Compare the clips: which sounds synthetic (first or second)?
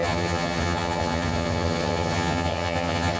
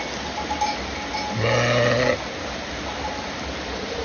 first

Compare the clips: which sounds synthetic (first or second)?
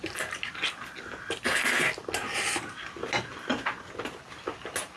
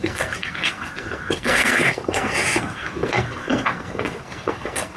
second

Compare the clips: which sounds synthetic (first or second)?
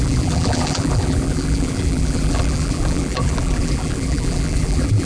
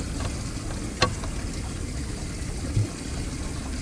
first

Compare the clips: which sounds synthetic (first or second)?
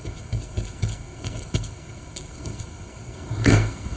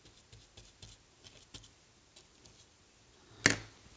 first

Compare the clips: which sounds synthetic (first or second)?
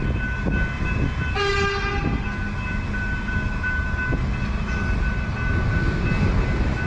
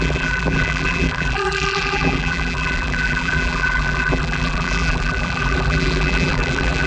second